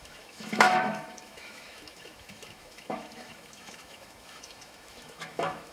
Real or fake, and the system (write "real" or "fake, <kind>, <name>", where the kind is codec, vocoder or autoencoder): fake, autoencoder, DAC-VAE